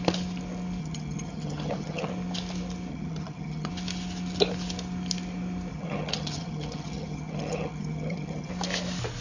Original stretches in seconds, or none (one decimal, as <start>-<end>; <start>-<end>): 0.0-0.8; 2.1-2.9; 3.7-5.7; 8.5-9.2